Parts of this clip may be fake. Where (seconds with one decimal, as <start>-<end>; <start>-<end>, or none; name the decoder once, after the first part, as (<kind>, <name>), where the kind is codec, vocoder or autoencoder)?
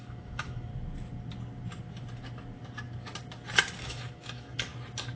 0.0-0.7 (autoencoder, DAC-VAE); 3.8-4.7